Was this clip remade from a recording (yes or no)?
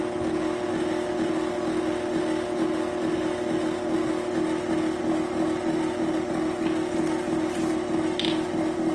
no